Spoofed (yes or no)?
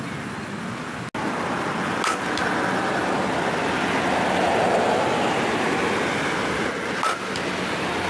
no